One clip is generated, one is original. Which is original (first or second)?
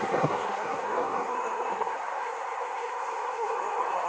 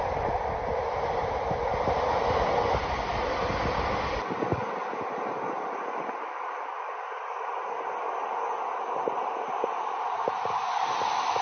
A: second